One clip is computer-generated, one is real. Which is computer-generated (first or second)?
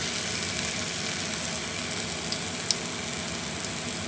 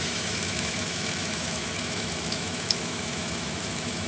second